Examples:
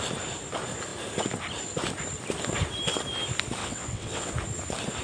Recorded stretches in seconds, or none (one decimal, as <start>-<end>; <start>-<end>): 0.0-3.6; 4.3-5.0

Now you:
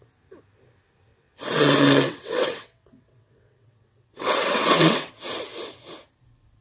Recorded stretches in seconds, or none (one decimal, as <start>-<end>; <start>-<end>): 0.0-1.1; 5.1-6.6

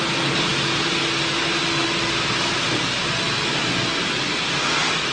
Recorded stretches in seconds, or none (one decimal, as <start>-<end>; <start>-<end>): 0.0-5.1

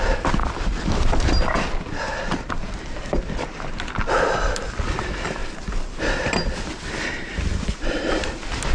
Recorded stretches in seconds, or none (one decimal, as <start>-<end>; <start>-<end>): 0.0-8.7

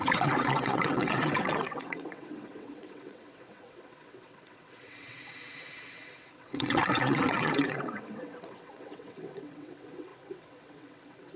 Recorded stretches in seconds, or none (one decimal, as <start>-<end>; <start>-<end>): none

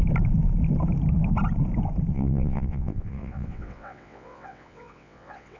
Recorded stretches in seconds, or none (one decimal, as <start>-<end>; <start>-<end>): 0.0-2.1

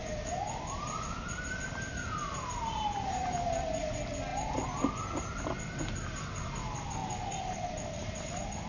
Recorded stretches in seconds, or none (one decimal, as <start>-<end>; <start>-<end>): 0.0-8.7